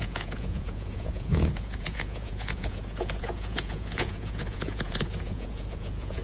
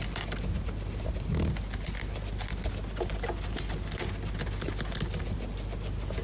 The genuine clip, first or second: second